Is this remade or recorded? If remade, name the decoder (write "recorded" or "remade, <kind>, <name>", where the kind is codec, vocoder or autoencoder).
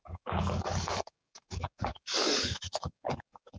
remade, codec, DAC